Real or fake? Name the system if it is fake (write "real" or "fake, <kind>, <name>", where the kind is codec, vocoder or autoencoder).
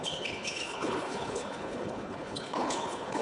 fake, codec, HILCodec